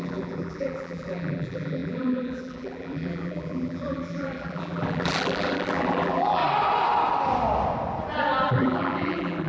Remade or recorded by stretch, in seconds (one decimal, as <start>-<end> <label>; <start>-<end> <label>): 0.0-6.4 remade; 6.4-8.5 recorded; 8.5-9.5 remade